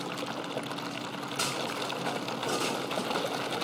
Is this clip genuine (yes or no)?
yes